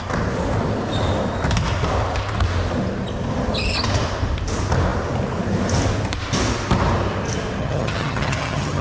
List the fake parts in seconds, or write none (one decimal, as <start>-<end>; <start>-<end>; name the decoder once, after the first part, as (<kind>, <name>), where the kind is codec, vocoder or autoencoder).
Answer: 7.6-8.8 (vocoder, HiFi-GAN)